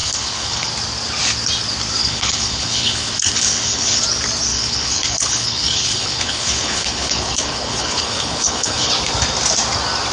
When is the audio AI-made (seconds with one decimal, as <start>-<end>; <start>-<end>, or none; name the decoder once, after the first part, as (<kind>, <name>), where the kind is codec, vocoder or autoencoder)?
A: 0.0-0.7 (codec, HILCodec); 2.0-4.0; 4.5-8.9